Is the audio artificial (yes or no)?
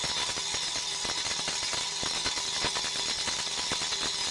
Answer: no